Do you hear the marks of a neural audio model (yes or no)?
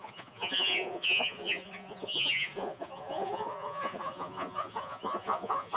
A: yes